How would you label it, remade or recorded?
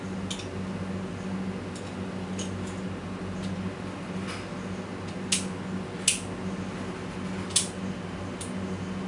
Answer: recorded